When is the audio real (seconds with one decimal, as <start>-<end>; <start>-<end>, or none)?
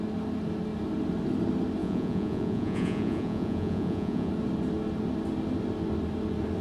0.0-1.8; 4.3-6.6